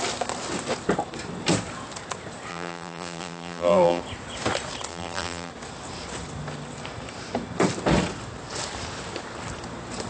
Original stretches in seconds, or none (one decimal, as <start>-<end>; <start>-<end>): 0.0-2.5; 4.0-4.9; 5.5-10.1